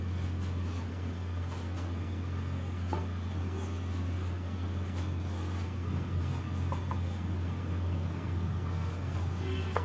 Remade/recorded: remade